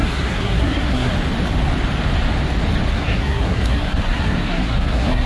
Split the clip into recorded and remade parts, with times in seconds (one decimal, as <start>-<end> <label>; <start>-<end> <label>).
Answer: 0.0-1.1 remade; 1.1-2.9 recorded; 2.9-5.3 remade